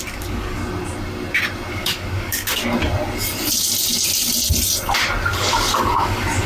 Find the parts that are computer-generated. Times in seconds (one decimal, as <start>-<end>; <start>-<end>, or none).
0.0-0.6; 1.7-2.6; 5.3-6.5

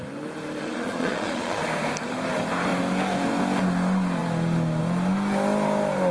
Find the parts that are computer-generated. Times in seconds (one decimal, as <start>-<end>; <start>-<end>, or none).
0.6-1.6

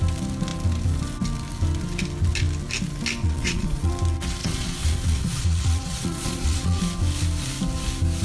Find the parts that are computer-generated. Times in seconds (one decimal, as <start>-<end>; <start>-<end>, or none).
3.2-3.9; 4.4-6.8

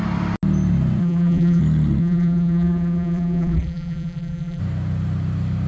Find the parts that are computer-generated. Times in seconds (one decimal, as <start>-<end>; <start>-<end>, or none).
1.0-1.6; 2.0-4.6

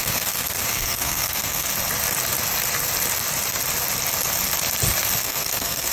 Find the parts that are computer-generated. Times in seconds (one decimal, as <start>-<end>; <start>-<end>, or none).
0.0-1.7; 5.2-5.9

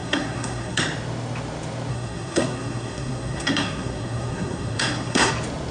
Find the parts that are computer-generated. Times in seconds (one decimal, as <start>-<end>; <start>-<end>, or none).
0.0-0.8; 1.9-5.3